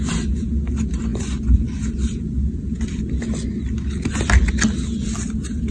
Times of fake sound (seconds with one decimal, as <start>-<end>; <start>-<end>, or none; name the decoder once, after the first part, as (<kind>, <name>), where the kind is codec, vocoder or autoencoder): none